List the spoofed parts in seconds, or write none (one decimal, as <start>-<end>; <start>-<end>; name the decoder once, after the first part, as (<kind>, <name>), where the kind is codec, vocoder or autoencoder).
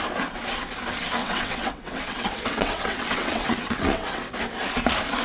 1.2-4.3 (vocoder, WaveNeXt)